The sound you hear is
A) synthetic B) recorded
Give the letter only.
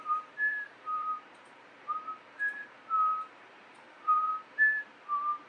A